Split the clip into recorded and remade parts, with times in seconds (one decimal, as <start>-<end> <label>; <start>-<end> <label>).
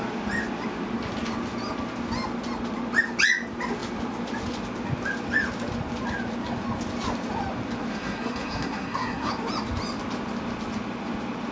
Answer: 0.0-7.9 recorded; 7.9-9.3 remade; 9.3-11.5 recorded